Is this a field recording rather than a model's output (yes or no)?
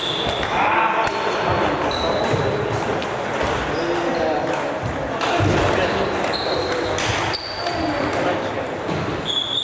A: yes